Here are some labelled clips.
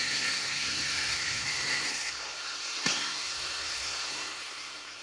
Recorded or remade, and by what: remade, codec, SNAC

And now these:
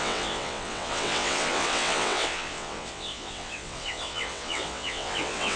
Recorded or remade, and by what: remade, vocoder, WaveNeXt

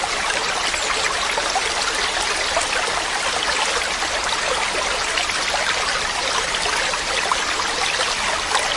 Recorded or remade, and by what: recorded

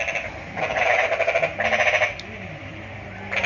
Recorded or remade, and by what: recorded